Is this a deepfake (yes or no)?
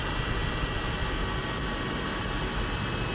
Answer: no